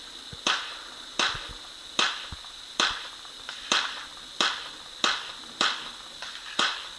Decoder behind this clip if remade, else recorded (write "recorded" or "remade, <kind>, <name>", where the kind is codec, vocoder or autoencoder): remade, vocoder, BigVGAN v2